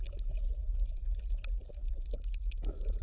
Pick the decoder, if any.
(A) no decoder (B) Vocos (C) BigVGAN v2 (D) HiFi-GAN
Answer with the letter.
A